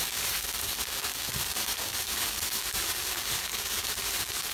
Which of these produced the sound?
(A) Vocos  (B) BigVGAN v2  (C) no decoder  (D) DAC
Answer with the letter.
D